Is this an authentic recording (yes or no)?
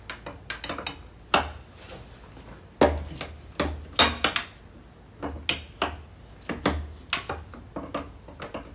yes